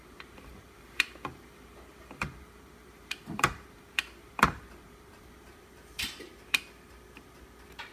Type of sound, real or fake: fake